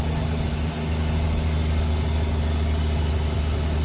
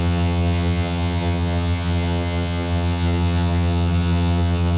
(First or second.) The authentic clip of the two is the first